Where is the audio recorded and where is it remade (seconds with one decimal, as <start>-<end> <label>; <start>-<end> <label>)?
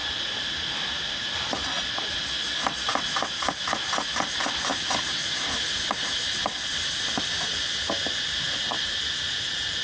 0.0-9.8 recorded